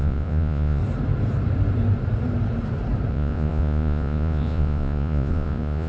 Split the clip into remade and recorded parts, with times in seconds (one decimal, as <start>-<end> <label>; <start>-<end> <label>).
0.0-0.8 remade; 0.8-3.1 recorded; 3.1-5.9 remade